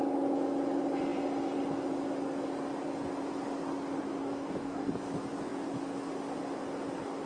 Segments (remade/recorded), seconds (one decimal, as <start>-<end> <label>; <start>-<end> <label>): 0.0-4.2 recorded; 4.2-4.9 remade; 4.9-7.3 recorded